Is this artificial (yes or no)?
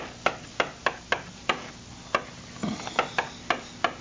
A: no